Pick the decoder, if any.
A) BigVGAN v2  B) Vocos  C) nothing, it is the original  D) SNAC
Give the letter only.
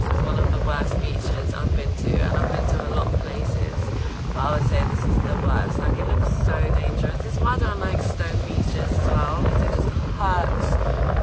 C